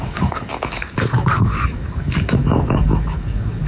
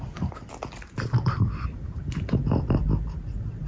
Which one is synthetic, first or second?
first